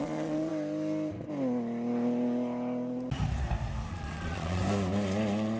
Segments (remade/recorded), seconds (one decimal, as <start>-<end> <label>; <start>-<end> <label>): 0.0-0.5 remade; 0.5-3.9 recorded; 3.9-4.6 remade; 4.6-5.6 recorded